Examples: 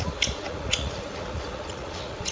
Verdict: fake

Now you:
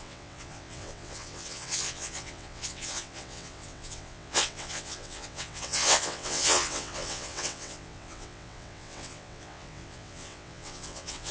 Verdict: fake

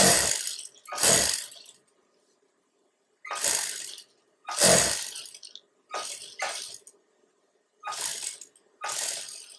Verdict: real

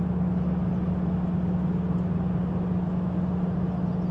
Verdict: real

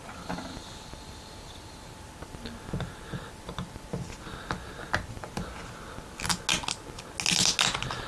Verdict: real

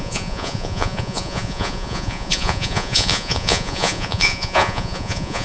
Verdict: fake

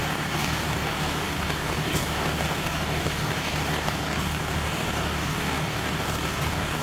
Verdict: fake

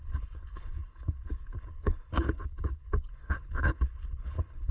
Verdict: fake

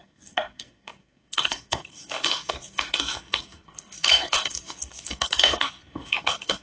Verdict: fake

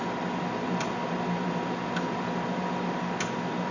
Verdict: real